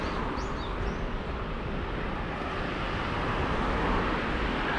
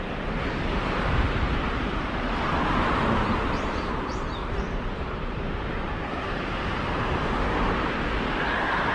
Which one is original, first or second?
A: first